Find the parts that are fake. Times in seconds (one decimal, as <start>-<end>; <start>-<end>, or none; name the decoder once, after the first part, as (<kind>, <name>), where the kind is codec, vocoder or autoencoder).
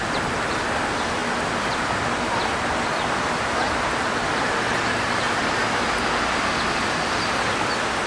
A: none